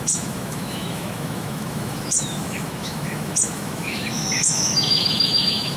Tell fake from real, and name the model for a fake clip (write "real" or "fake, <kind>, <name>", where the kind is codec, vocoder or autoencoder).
fake, autoencoder, DAC-VAE